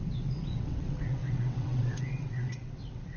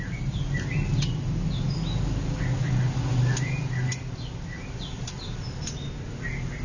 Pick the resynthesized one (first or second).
first